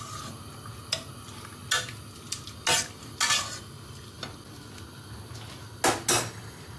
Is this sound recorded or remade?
recorded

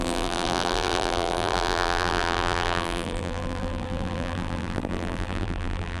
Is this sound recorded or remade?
remade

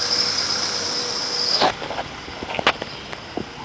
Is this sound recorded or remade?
recorded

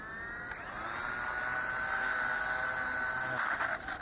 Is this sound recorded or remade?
recorded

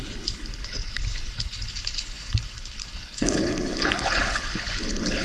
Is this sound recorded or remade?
remade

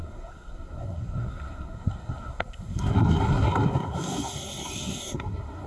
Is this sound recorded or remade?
remade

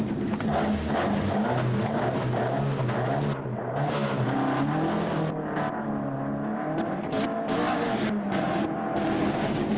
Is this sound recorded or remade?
recorded